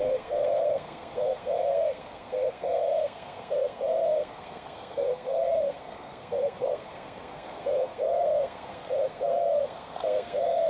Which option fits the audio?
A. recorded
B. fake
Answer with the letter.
B